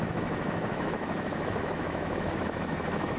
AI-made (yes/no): yes